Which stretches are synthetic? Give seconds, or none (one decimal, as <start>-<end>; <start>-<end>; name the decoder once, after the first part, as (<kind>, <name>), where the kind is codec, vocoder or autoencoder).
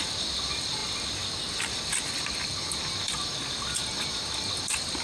none